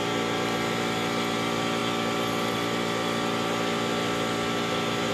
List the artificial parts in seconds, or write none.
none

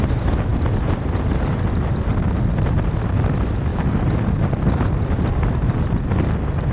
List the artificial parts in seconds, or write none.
none

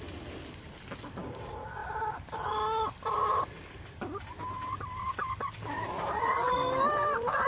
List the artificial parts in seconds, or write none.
none